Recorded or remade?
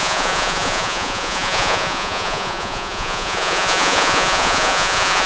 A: remade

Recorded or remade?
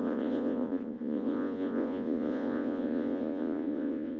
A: remade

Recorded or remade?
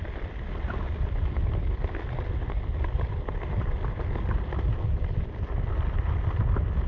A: remade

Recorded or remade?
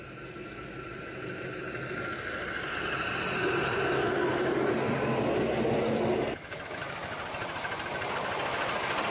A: recorded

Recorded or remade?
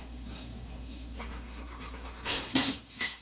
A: remade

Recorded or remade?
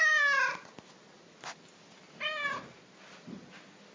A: recorded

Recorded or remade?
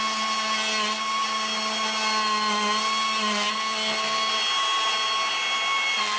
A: recorded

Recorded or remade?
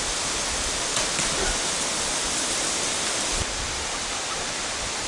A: recorded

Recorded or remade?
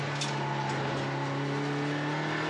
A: recorded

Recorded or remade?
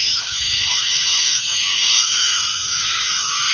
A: remade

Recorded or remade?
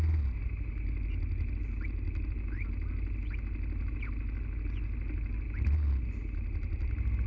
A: recorded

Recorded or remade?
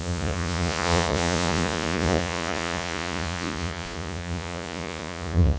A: remade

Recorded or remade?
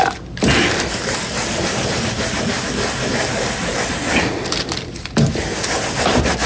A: recorded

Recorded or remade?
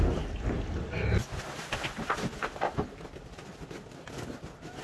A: recorded